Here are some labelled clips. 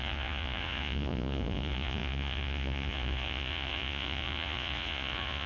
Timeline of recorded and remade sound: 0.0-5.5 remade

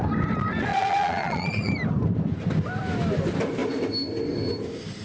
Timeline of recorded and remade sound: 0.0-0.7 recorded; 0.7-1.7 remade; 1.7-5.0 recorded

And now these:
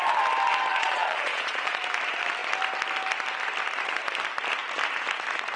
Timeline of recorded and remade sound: 0.0-0.7 recorded; 0.7-1.8 remade; 1.8-5.6 recorded